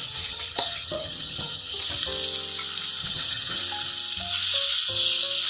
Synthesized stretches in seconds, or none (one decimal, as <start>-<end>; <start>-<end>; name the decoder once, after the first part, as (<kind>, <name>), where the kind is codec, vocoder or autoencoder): 0.0-1.9 (vocoder, HiFi-GAN); 3.0-3.6